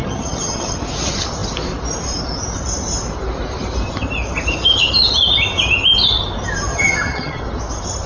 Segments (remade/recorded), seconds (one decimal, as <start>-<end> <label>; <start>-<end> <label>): 0.0-0.7 remade; 0.7-6.7 recorded; 6.7-7.4 remade; 7.4-8.1 recorded